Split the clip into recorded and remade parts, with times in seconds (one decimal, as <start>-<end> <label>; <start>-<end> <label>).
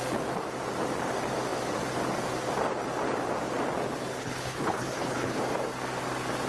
0.0-4.2 recorded; 4.2-5.4 remade; 5.4-6.5 recorded